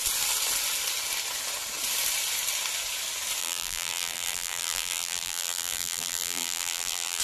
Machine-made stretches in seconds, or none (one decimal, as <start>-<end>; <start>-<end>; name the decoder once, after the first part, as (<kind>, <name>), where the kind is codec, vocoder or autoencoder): 3.4-7.2 (vocoder, BigVGAN v2)